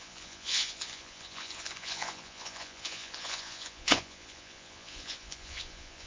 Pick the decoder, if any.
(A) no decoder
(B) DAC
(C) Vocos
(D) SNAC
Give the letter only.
C